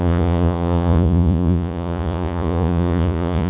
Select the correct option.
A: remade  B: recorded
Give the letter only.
A